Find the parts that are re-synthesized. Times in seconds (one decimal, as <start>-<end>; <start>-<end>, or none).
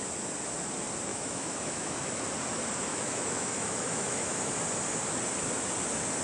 1.1-2.2; 2.9-4.5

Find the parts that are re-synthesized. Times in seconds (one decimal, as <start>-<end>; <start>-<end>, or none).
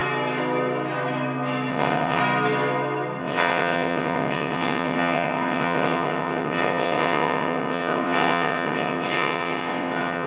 1.7-2.2; 3.2-10.3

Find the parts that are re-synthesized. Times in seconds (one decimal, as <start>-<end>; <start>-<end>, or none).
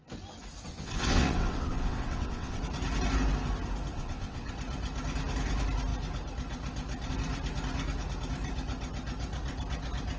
0.7-2.6; 3.9-4.5